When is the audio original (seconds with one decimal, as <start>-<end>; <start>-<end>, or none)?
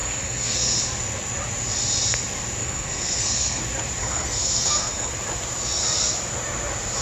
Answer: 0.8-2.6; 3.6-4.0; 5.1-7.0